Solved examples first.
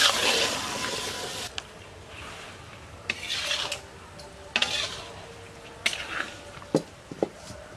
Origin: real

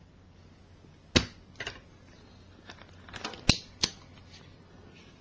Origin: real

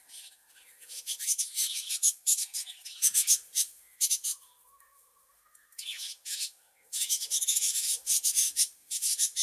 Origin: fake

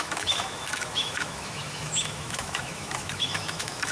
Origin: fake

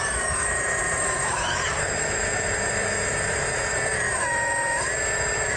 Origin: fake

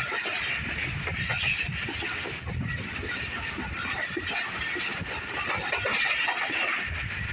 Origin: real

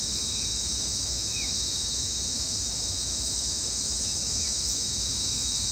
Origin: fake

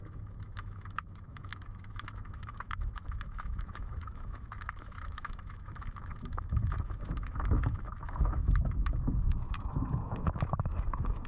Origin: fake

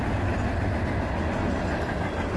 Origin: real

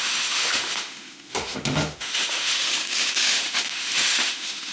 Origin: fake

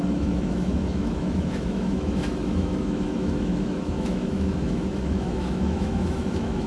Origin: fake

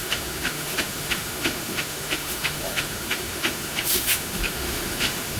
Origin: fake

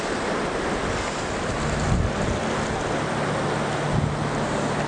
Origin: real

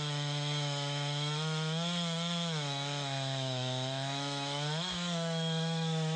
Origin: fake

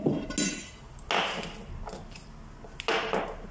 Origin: real